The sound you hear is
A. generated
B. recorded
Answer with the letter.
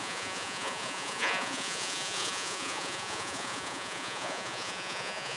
A